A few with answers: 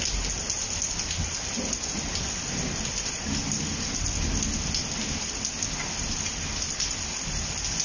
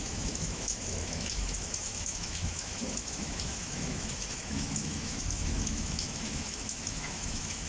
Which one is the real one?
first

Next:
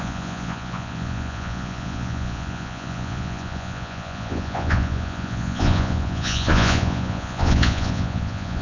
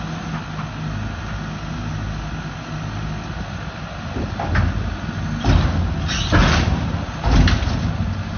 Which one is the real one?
second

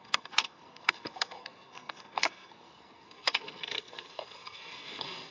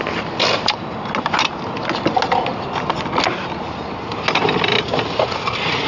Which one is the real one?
second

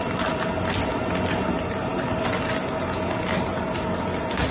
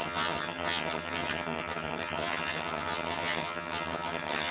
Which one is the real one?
first